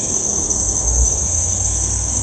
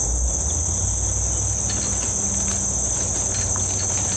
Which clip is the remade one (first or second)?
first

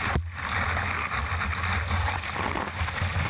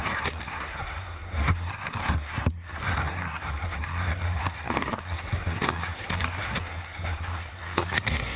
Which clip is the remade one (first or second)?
second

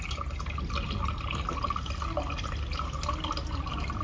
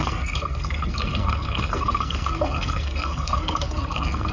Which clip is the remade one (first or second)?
second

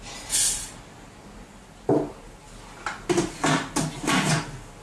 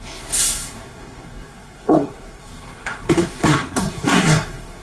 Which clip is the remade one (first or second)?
second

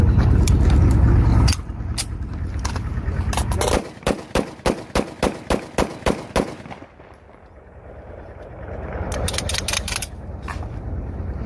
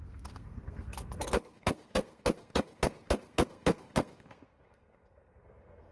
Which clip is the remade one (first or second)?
second